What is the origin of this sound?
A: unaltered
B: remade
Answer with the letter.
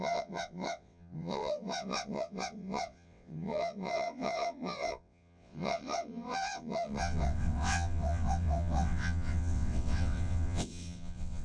B